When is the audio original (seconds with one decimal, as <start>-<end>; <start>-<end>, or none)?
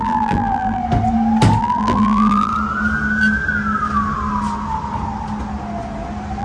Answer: 0.8-1.6; 2.5-6.4